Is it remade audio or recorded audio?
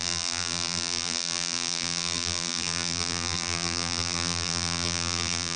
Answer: remade